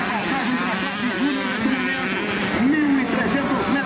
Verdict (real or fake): real